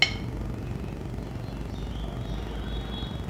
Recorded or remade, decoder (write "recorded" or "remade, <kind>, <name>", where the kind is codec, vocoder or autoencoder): recorded